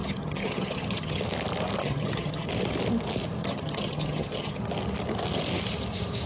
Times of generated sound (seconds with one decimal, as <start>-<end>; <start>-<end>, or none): 0.0-1.2; 1.8-2.5; 3.4-4.6

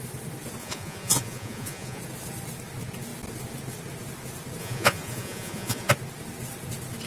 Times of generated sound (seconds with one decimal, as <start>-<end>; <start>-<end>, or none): 0.6-2.0; 4.6-5.9

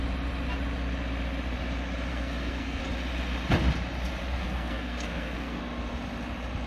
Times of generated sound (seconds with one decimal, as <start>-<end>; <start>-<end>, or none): 2.1-2.8; 4.3-5.6

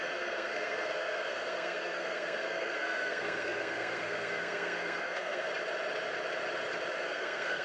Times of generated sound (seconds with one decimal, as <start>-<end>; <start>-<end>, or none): 0.0-5.5; 7.0-7.6

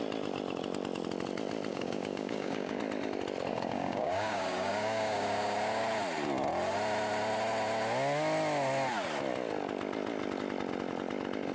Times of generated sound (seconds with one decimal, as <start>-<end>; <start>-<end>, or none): 1.7-2.8; 3.5-5.8

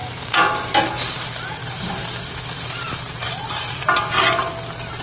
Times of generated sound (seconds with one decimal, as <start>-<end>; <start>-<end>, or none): 0.0-0.7; 1.6-4.5

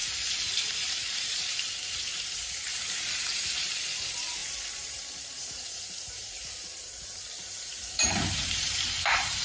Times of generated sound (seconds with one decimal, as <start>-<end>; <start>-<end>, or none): 0.0-3.7; 4.4-9.4

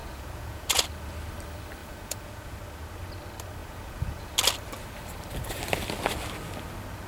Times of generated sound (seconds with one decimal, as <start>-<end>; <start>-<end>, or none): 0.0-0.8; 1.8-2.5; 3.6-4.3